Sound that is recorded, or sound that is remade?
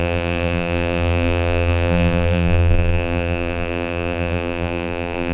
remade